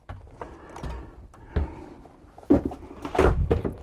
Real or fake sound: real